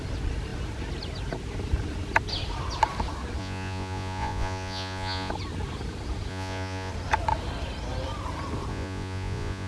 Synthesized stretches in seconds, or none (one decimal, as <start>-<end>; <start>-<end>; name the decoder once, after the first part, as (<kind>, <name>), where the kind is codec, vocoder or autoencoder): 3.4-5.3 (vocoder, Vocos); 6.3-6.9; 8.7-9.7

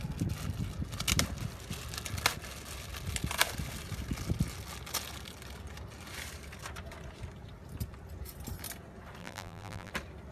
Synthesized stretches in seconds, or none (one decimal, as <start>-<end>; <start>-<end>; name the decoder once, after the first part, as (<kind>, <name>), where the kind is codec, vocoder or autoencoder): 9.2-9.9 (vocoder, BigVGAN v2)

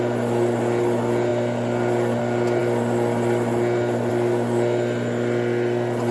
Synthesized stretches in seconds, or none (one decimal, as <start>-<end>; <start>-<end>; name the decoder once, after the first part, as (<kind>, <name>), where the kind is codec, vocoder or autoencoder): none

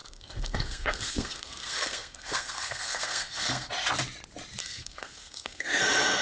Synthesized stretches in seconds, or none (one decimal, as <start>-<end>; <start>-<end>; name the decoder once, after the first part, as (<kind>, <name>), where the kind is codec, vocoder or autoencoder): 0.0-3.7 (codec, SNAC); 4.6-5.8

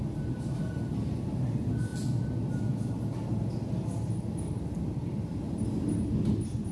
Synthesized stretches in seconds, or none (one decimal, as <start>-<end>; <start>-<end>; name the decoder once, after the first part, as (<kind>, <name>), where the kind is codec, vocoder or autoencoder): none